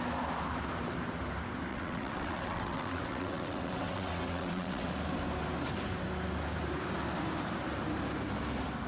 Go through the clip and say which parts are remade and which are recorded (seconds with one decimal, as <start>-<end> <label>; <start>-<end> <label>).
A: 0.0-1.7 recorded; 1.7-4.9 remade; 4.9-8.9 recorded